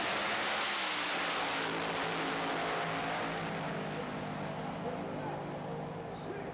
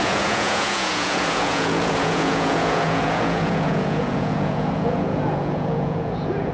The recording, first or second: first